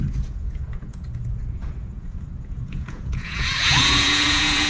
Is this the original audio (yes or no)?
no